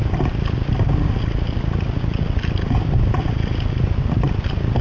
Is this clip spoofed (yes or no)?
no